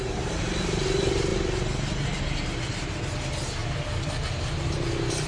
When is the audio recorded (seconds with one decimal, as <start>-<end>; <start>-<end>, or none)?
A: 0.0-5.3